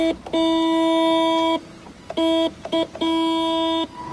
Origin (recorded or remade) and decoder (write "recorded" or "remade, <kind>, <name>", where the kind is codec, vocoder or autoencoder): recorded